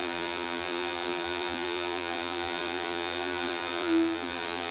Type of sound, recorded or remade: remade